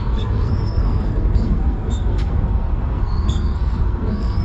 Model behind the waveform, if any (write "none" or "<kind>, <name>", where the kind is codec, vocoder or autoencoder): codec, SNAC